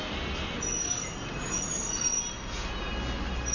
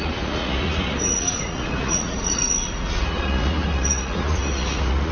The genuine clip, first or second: first